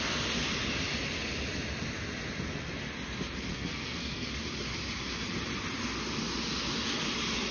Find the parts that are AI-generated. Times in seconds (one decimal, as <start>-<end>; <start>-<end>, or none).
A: 3.5-4.3

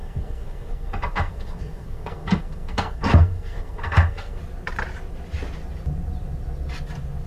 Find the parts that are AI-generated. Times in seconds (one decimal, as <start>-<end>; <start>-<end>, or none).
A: 0.0-4.4

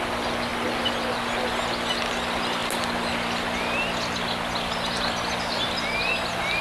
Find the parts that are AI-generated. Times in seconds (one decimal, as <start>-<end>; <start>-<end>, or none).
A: none

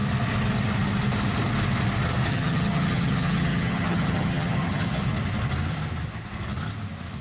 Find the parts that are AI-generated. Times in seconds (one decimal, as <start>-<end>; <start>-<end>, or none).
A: 2.3-5.1

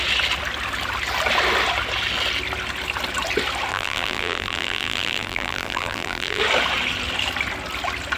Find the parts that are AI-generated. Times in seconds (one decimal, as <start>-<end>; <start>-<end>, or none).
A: 3.7-6.4

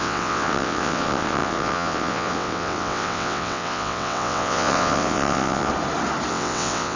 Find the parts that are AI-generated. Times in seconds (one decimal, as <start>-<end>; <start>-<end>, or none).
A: 0.0-5.7; 6.3-7.0

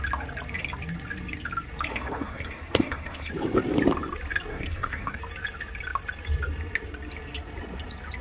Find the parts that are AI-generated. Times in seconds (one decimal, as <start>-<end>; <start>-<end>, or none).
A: 1.9-3.3; 4.5-5.2

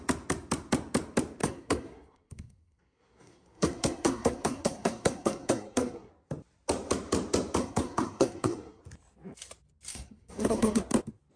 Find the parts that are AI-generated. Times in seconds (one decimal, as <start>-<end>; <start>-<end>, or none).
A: 1.4-6.1; 7.6-8.8; 9.9-10.8